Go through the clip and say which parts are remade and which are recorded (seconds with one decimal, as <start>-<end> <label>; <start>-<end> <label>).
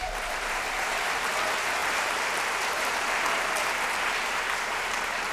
0.0-1.3 remade; 1.3-1.8 recorded; 1.8-5.3 remade